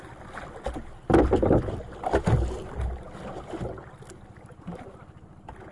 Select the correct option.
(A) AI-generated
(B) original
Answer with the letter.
B